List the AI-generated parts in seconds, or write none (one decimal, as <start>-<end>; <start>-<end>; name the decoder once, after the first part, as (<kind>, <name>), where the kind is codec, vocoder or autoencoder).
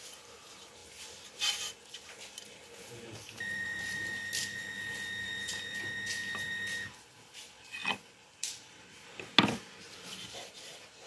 0.0-0.8 (vocoder, BigVGAN v2); 3.4-5.5; 7.1-7.8; 9.8-11.1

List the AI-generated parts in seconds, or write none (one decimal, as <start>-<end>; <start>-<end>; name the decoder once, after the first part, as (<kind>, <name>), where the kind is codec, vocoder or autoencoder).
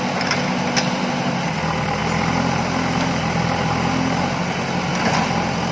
none